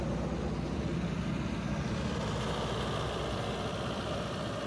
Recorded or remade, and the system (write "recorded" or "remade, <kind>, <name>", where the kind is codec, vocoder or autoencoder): recorded